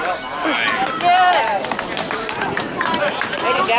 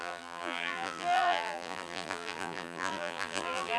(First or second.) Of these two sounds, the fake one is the second